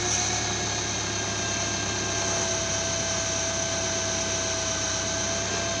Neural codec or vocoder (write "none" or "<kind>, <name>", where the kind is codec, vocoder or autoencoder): none